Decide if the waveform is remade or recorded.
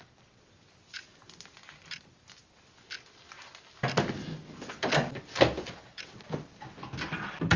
recorded